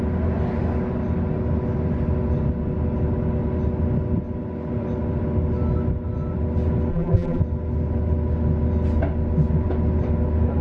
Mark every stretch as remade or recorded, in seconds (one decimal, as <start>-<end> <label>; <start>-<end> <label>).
0.0-6.9 recorded; 6.9-7.4 remade; 7.4-10.6 recorded